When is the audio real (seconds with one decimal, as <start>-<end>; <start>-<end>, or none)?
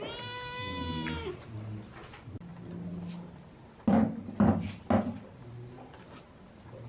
0.0-6.9